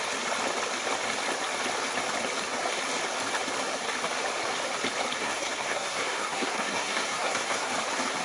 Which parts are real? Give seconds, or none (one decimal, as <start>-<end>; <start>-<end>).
0.0-5.2; 7.7-8.2